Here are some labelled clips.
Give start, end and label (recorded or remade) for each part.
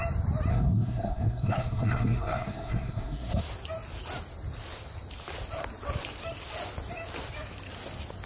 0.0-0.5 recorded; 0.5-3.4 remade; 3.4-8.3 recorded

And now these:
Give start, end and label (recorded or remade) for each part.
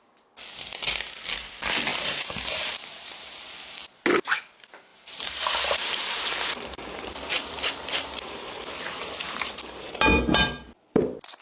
0.0-1.9 recorded; 1.9-4.0 remade; 4.0-4.9 recorded; 4.9-9.6 remade; 9.6-11.4 recorded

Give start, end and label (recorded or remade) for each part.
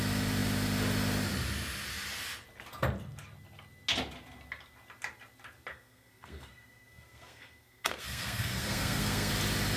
0.0-5.7 recorded; 5.7-9.3 remade; 9.3-9.8 recorded